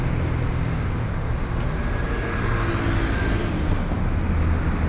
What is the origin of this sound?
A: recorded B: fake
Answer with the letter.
A